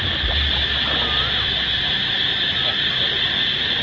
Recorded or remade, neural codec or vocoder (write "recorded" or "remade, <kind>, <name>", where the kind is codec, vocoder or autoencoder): recorded